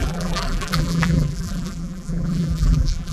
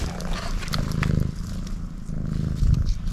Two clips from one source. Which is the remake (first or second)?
first